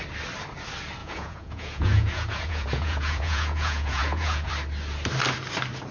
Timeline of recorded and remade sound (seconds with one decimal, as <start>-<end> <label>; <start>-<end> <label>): 0.0-1.0 recorded; 1.0-4.5 remade; 4.5-5.9 recorded